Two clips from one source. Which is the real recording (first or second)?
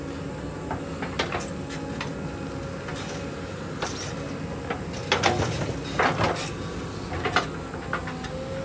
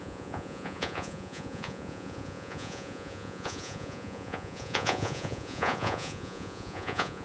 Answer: first